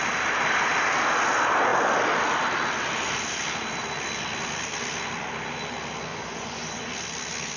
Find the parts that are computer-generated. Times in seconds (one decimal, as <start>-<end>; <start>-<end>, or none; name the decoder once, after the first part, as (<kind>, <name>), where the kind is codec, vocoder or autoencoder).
6.1-6.9 (vocoder, Vocos)